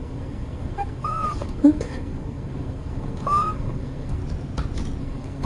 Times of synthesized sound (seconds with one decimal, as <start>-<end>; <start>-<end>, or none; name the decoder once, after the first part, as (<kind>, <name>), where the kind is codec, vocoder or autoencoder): 0.0-4.2 (codec, SNAC); 5.0-5.5